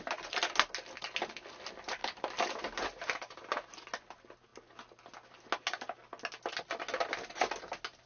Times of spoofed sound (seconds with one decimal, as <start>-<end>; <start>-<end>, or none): none